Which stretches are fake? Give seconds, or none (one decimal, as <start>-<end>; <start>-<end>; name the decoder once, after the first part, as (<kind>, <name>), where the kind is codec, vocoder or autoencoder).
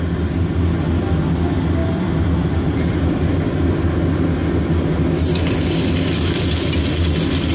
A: 1.8-3.5 (vocoder, BigVGAN v2)